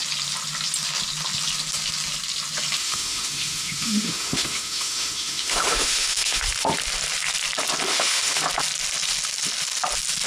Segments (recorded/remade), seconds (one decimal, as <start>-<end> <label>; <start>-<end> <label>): 0.0-2.8 recorded; 2.8-6.4 remade; 6.4-7.9 recorded; 7.9-8.4 remade; 8.4-10.3 recorded

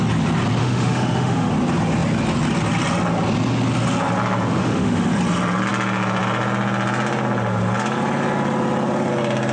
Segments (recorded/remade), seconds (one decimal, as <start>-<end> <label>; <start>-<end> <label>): 0.0-0.6 recorded; 0.6-1.5 remade; 1.5-4.6 recorded; 4.6-5.1 remade; 5.1-9.5 recorded

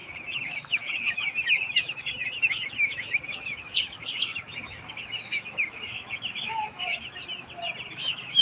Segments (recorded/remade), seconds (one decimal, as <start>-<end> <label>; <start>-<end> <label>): 0.0-7.2 remade; 7.2-7.9 recorded; 7.9-8.4 remade

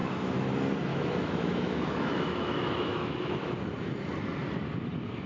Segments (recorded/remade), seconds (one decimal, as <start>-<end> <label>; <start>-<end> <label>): 0.0-0.5 remade; 0.5-0.9 recorded; 0.9-3.5 remade; 3.5-5.3 recorded

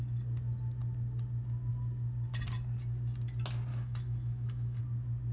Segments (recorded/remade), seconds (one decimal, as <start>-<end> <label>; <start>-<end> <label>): 0.0-3.7 recorded; 3.7-4.8 remade; 4.8-5.3 recorded

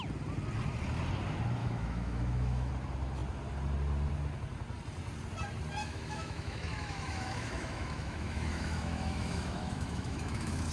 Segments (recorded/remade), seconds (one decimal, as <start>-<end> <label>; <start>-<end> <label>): 0.0-1.6 recorded; 1.6-2.7 remade; 2.7-5.8 recorded; 5.8-10.7 remade